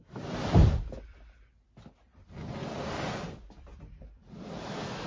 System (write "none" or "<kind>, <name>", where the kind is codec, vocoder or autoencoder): none